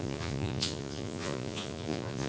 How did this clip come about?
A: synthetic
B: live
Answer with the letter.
A